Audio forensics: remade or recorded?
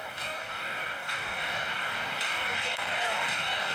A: remade